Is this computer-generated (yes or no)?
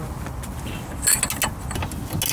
no